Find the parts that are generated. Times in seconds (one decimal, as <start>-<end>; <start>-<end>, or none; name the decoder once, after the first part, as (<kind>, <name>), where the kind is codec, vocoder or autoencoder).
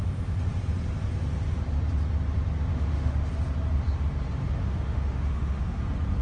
2.7-3.3 (autoencoder, DAC-VAE); 4.4-5.8